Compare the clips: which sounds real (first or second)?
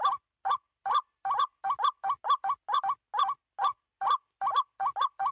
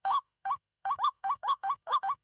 first